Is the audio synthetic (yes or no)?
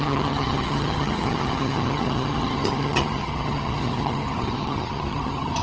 yes